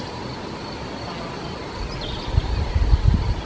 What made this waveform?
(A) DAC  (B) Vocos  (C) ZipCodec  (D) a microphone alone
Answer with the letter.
D